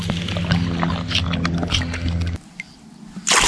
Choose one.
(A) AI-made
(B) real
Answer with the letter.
B